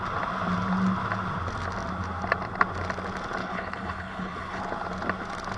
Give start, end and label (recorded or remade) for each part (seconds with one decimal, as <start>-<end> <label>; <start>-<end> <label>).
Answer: 0.0-3.4 recorded; 3.4-4.6 remade; 4.6-5.6 recorded